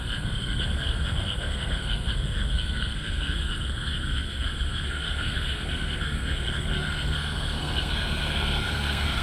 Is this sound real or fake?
fake